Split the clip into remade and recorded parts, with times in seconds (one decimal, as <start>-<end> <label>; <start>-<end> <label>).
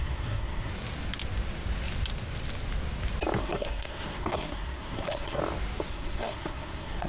0.0-0.7 remade; 0.7-3.4 recorded; 3.4-5.4 remade; 5.4-5.9 recorded; 5.9-7.1 remade